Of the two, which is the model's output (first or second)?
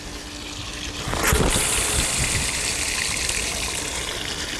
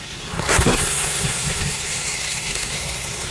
second